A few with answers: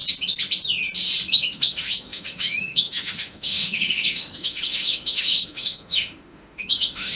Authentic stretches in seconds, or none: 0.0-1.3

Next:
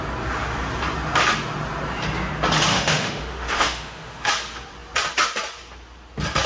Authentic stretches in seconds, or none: 0.0-2.7; 4.3-6.5

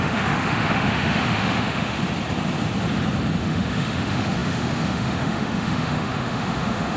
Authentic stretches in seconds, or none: 2.0-3.4

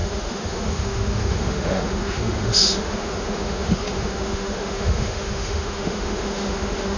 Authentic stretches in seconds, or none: none

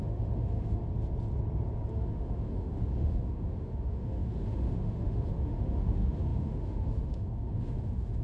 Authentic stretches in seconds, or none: 0.8-1.9